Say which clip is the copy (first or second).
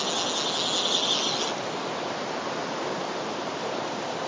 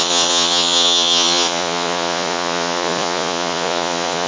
second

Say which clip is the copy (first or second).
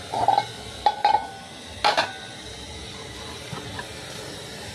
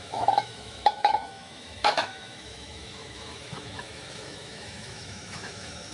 second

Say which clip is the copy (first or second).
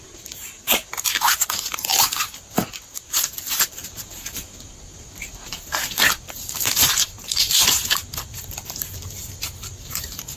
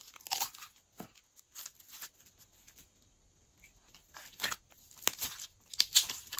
first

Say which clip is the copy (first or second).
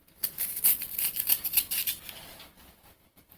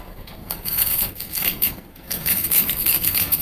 second